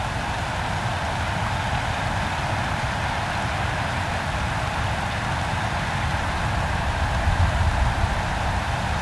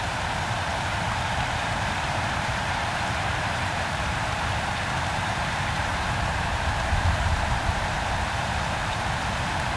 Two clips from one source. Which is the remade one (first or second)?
second